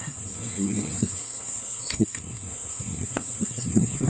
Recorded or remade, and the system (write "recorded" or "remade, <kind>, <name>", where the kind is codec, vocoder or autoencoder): remade, codec, SNAC